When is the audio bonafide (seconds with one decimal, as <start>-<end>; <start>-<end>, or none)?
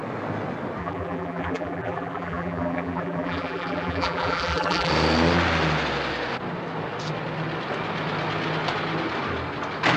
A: 0.0-0.8; 4.9-10.0